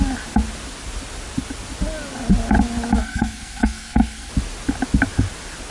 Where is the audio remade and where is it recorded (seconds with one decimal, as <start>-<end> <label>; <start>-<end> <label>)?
0.0-3.0 recorded; 3.0-4.3 remade; 4.3-5.7 recorded